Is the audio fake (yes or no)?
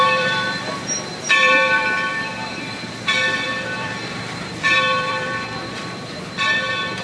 yes